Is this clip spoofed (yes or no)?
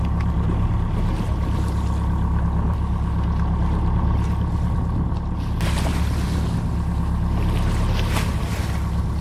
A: no